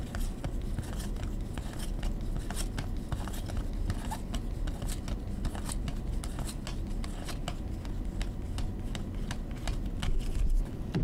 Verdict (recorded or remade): recorded